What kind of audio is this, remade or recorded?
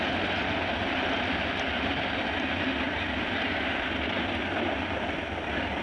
recorded